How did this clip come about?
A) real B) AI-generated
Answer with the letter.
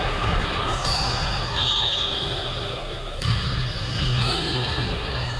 B